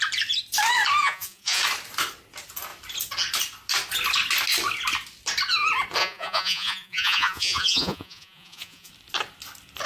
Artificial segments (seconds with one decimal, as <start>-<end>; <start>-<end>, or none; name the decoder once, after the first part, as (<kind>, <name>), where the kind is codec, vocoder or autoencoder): 1.0-1.6 (vocoder, Vocos); 6.0-8.9